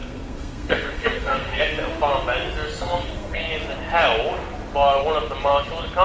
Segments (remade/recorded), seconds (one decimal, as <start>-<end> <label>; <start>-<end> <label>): 0.0-1.6 remade; 1.6-2.8 recorded; 2.8-3.4 remade; 3.4-6.0 recorded